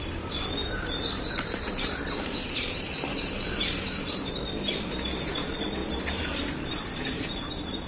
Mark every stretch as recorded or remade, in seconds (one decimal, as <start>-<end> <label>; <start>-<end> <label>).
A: 0.0-0.6 recorded; 0.6-4.3 remade; 4.3-5.8 recorded; 5.8-7.5 remade; 7.5-7.9 recorded